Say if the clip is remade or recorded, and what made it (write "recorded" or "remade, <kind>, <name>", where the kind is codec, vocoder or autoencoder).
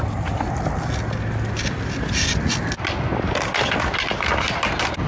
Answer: recorded